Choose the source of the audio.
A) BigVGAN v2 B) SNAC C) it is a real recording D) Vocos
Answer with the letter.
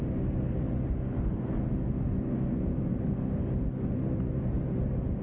C